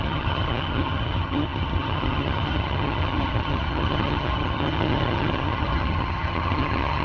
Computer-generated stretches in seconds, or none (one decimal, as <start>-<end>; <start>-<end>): 0.0-7.0